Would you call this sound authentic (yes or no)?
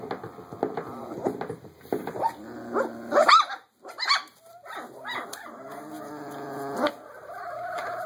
yes